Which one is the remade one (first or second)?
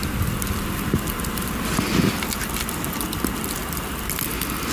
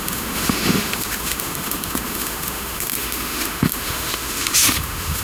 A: second